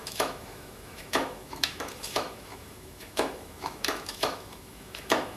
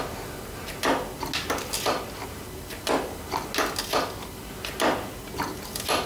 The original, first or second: second